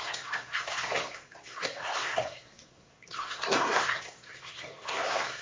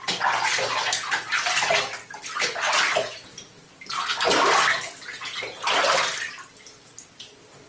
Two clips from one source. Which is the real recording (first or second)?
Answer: second